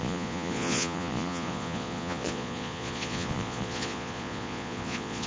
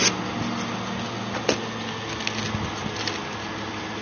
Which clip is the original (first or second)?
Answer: second